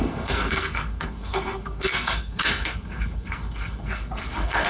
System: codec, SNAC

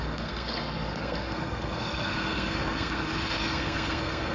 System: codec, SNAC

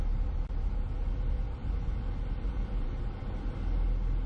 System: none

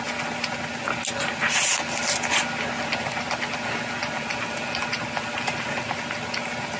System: none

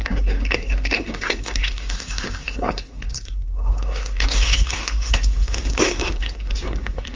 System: codec, SNAC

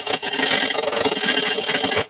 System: none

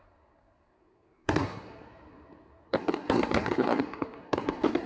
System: codec, SNAC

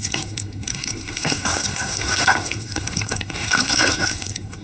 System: codec, SNAC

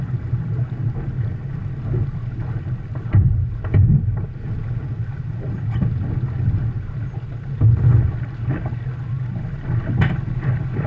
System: none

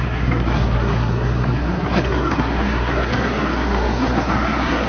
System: codec, SNAC